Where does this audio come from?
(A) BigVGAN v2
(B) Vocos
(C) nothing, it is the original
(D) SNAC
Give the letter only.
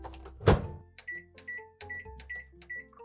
C